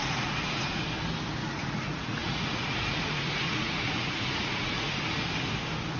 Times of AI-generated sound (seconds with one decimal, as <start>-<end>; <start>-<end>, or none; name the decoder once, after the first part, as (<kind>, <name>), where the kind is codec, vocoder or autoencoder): 0.0-0.8 (vocoder, Vocos); 1.4-5.0